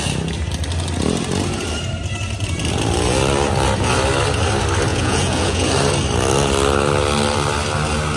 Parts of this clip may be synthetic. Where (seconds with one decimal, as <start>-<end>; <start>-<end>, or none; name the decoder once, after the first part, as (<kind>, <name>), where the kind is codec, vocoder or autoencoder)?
4.9-5.7 (vocoder, Vocos)